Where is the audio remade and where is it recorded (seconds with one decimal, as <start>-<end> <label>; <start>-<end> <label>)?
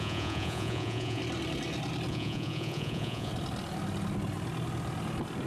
0.0-1.2 remade; 1.2-2.1 recorded; 2.1-3.3 remade; 3.3-5.5 recorded